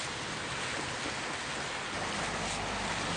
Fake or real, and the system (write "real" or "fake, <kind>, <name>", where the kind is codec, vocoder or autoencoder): real